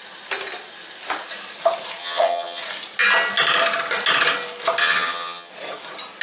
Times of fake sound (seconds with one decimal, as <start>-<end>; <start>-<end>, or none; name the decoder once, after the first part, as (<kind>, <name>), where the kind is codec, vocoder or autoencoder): 2.0-2.6 (vocoder, HiFi-GAN); 4.8-5.5